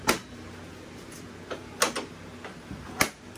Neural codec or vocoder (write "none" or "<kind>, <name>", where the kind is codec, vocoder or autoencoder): none